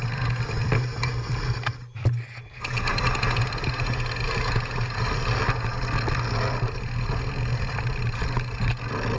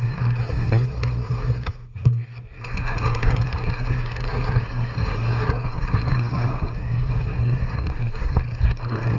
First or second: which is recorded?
first